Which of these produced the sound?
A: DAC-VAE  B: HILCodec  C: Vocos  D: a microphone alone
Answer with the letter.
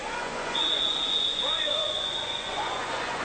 C